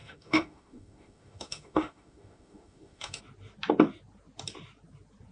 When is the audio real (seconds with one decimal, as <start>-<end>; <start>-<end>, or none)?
3.2-5.3